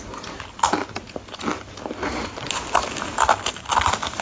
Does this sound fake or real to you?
real